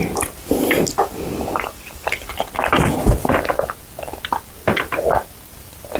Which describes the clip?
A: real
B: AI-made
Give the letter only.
A